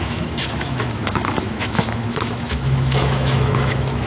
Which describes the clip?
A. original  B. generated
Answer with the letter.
B